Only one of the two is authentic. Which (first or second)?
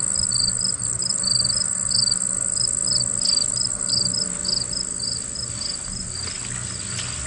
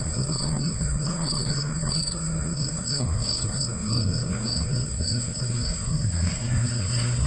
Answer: first